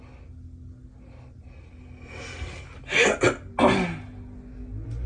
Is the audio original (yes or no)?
yes